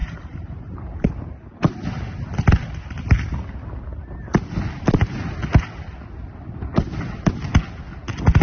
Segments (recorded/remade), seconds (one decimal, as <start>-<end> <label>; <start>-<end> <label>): 0.0-1.6 remade; 1.6-8.4 recorded

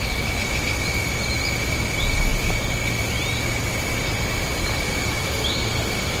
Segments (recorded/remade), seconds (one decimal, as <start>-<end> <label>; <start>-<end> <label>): 0.0-6.2 recorded

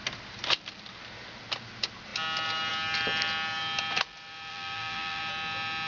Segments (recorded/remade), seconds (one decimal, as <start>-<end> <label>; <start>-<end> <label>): 0.0-4.5 recorded; 4.5-5.2 remade; 5.2-5.9 recorded

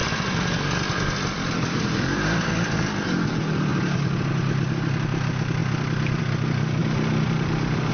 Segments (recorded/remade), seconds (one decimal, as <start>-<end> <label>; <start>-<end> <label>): 0.0-3.3 remade; 3.3-5.6 recorded; 5.6-6.2 remade; 6.2-6.8 recorded; 6.8-7.9 remade

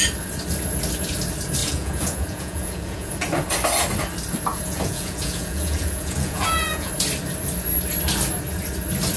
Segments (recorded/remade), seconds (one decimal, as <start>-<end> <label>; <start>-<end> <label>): 0.0-1.6 recorded; 1.6-3.1 remade; 3.1-4.5 recorded; 4.5-6.9 remade; 6.9-9.2 recorded

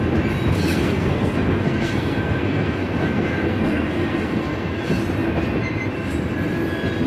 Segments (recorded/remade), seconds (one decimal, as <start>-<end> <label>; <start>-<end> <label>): 0.0-0.5 recorded; 0.5-4.8 remade; 4.8-7.1 recorded

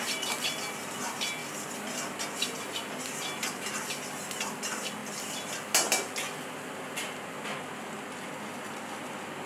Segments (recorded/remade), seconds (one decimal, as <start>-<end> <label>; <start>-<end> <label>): 0.0-9.5 recorded

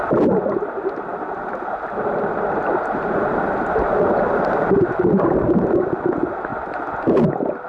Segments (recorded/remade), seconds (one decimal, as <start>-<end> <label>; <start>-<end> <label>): 0.0-1.1 recorded; 1.1-5.7 remade; 5.7-6.5 recorded; 6.5-7.2 remade; 7.2-7.7 recorded